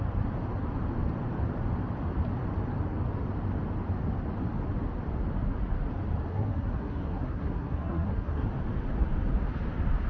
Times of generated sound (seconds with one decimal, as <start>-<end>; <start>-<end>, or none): 6.3-8.5